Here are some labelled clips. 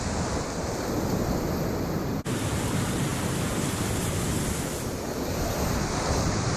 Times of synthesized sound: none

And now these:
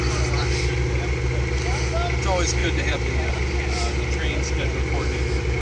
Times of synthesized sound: 2.6-3.3 (vocoder, BigVGAN v2)

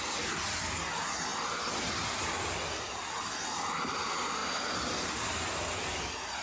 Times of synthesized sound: none

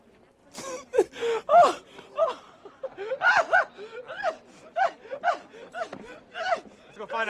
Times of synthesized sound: 0.4-3.1 (vocoder, BigVGAN v2); 5.9-6.5

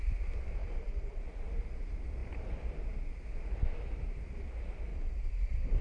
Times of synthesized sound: 0.6-1.2 (vocoder, BigVGAN v2); 4.9-5.8

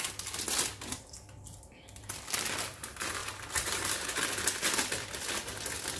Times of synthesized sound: 3.2-4.2 (vocoder, BigVGAN v2)